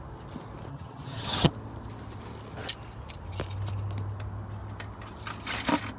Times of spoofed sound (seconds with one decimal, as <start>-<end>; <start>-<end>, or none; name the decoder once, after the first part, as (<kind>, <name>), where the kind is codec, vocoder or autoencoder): 0.7-1.5 (vocoder, HiFi-GAN)